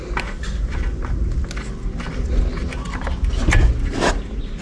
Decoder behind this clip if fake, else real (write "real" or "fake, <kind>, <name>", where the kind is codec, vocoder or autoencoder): real